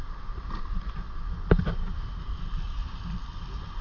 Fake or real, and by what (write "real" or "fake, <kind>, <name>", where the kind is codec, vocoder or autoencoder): real